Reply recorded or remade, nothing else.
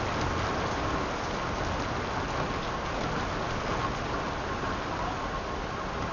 recorded